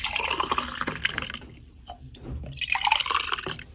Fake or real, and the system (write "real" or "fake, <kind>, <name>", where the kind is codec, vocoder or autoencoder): real